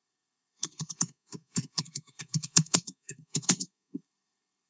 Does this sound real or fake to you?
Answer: fake